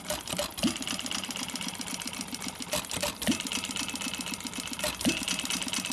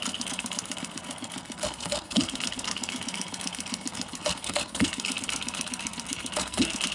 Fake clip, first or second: second